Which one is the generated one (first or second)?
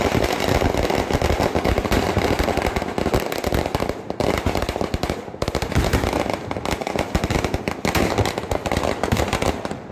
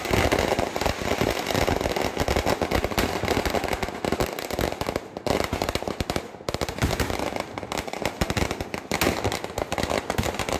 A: first